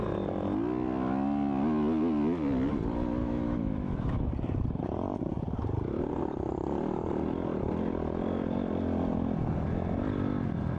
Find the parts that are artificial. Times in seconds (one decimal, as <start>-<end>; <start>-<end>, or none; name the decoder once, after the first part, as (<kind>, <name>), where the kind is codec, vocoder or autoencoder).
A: 3.2-4.3 (autoencoder, DAC-VAE)

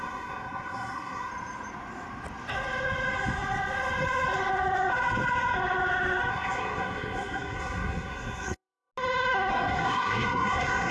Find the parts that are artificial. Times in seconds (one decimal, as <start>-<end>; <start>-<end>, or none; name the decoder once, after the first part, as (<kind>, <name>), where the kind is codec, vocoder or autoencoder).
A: 0.0-1.3 (codec, SNAC); 6.3-8.9; 9.5-10.9